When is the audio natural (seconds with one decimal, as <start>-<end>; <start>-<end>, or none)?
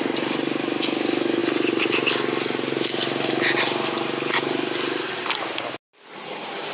0.0-6.7